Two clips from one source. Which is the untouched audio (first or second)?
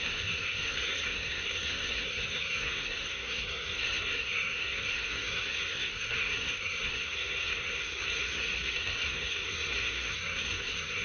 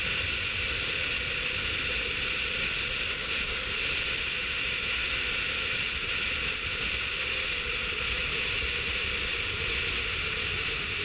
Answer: second